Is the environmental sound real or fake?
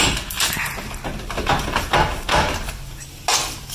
real